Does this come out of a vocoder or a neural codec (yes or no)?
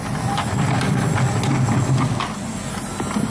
no